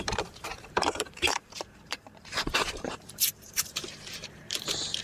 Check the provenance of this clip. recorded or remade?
remade